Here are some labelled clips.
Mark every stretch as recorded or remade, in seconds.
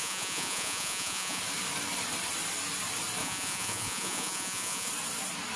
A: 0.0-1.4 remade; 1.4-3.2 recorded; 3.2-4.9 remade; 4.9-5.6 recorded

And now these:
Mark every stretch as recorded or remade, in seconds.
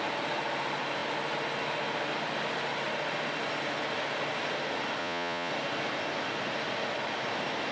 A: 0.0-5.0 recorded; 5.0-5.5 remade; 5.5-7.7 recorded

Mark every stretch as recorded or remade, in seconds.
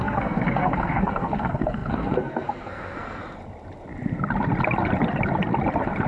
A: 0.0-3.2 remade; 3.2-6.1 recorded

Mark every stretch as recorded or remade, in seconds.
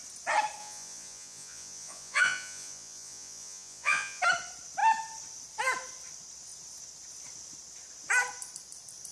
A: 0.0-0.6 recorded; 0.6-4.2 remade; 4.2-9.1 recorded